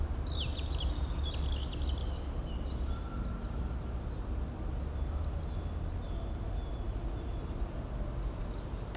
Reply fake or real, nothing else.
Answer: real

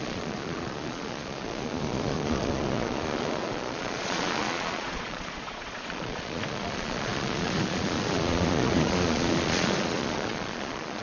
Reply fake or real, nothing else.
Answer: fake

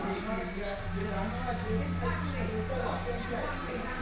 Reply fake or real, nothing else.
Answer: real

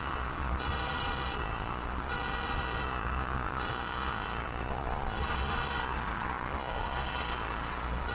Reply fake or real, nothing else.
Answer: fake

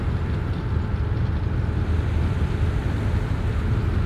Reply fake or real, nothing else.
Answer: real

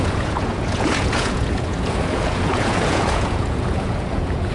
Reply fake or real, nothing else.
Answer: fake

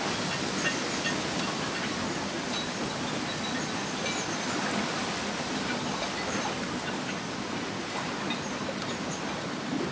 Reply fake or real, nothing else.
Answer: real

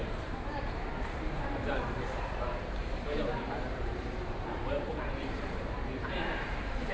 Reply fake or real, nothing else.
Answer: fake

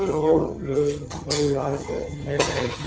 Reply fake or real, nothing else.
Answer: fake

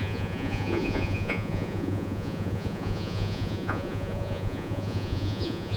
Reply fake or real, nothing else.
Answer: fake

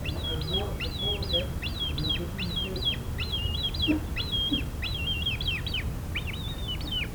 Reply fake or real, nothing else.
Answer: real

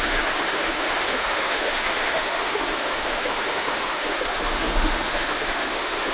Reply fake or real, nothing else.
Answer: fake